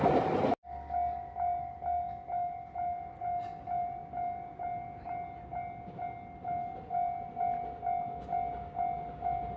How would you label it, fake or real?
real